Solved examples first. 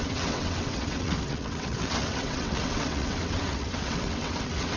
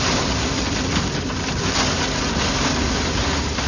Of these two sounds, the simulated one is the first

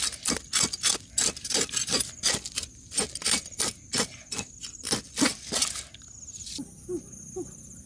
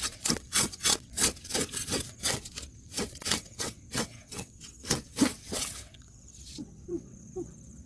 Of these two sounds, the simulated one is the second